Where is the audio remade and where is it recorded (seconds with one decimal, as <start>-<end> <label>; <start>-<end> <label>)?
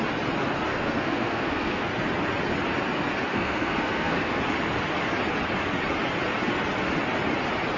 0.0-0.7 recorded; 0.7-1.9 remade; 1.9-3.3 recorded; 3.3-4.4 remade; 4.4-7.8 recorded